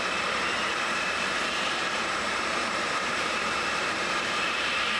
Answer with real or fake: fake